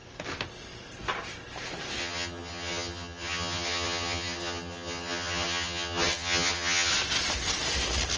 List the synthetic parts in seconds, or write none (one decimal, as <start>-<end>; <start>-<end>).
2.0-6.9